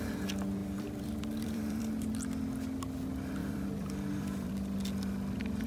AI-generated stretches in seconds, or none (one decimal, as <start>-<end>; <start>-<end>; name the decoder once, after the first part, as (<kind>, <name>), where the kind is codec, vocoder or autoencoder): 0.6-2.1 (vocoder, BigVGAN v2); 3.4-4.5